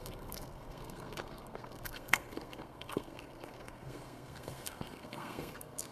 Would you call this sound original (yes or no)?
no